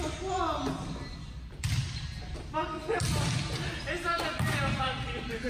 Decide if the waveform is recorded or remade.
recorded